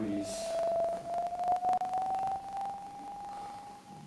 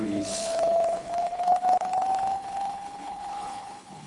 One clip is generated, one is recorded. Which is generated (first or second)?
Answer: second